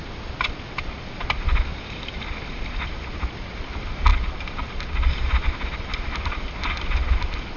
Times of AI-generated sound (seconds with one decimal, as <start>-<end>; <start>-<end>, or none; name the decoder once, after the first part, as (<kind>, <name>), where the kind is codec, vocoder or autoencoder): none